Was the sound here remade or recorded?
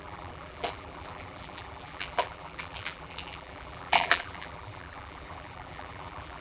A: remade